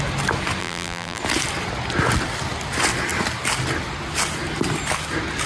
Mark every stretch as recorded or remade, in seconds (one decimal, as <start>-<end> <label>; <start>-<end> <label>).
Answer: 0.0-0.6 recorded; 0.6-1.2 remade; 1.2-5.5 recorded

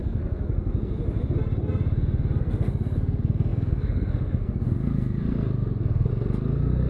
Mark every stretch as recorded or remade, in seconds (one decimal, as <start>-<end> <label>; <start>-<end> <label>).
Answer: 0.0-1.0 remade; 1.0-2.4 recorded; 2.4-6.9 remade